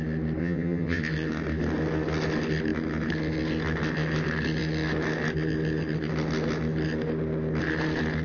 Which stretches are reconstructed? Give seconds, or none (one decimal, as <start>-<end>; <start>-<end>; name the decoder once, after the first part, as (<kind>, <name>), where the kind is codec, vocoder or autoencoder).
0.4-1.0 (vocoder, HiFi-GAN)